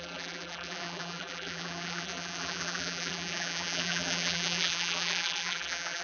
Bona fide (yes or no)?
no